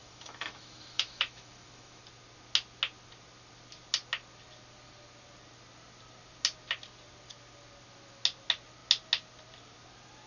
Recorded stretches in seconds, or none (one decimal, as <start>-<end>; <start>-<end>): 2.0-10.3